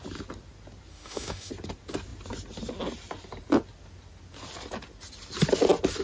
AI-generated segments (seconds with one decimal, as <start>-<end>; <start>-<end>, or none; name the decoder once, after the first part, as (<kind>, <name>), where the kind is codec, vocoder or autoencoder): 0.9-1.5 (autoencoder, DAC-VAE)